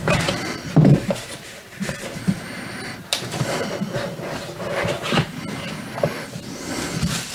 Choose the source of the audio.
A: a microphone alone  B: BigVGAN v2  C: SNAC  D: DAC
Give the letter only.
B